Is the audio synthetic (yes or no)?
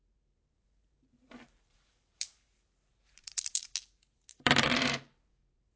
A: yes